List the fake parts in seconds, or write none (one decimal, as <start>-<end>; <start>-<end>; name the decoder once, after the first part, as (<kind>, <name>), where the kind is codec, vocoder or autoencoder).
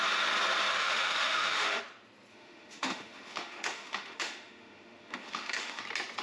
0.7-1.8 (autoencoder, DAC-VAE); 2.3-5.8